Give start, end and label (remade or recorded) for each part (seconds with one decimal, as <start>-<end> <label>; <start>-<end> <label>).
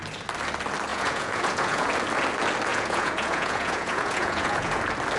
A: 0.0-0.9 recorded; 0.9-1.9 remade; 1.9-2.7 recorded; 2.7-4.8 remade; 4.8-5.2 recorded